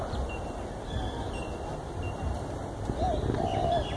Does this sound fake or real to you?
real